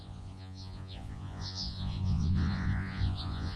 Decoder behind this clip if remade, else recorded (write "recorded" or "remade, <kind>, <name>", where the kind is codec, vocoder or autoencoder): remade, vocoder, Vocos